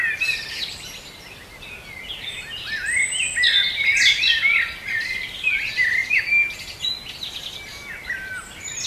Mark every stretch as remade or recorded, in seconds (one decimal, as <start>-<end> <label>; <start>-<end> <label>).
0.0-8.9 recorded